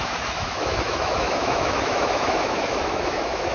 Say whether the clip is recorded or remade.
remade